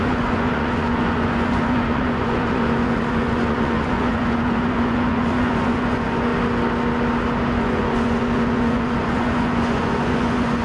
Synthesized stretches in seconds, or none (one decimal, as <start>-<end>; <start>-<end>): 0.0-6.3; 7.6-10.6